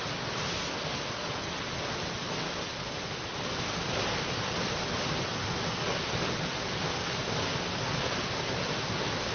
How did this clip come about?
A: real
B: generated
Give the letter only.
A